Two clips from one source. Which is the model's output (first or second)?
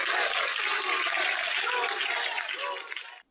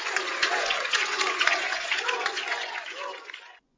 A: second